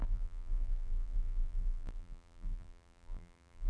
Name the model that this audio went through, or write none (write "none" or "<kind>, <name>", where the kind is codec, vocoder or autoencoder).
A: vocoder, BigVGAN v2